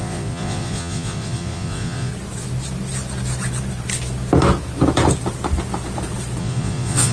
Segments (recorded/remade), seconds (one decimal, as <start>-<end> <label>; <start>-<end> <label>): 0.0-2.1 remade; 2.1-6.4 recorded; 6.4-7.1 remade